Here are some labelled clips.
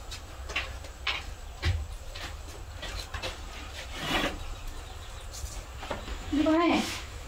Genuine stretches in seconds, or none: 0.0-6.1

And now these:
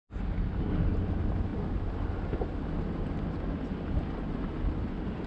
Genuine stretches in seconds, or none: 0.0-5.3

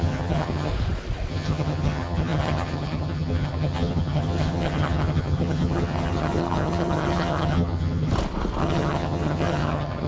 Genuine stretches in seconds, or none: 0.7-1.3; 8.1-8.6

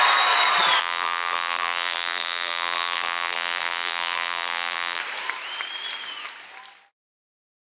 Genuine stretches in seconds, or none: 0.0-0.8; 5.0-7.6

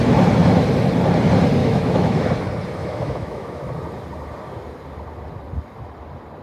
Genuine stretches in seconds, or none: 0.0-1.6; 2.3-2.8; 3.6-6.4

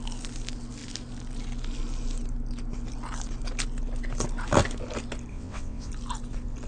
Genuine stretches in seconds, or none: 0.0-5.3; 5.9-6.7